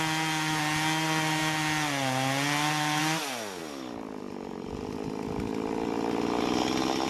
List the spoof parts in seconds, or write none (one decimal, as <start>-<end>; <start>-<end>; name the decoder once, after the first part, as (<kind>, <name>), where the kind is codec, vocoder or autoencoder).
none